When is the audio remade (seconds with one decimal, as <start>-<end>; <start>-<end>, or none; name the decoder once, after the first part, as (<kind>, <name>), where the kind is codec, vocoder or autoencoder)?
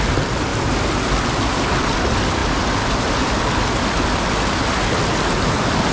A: none